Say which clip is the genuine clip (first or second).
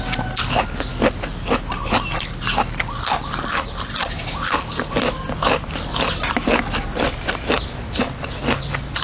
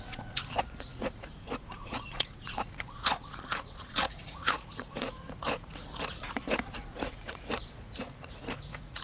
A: first